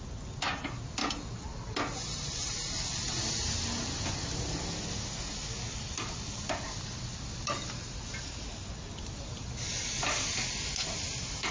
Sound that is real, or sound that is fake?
real